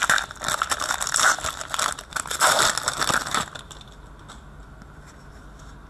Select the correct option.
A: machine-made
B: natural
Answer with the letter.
B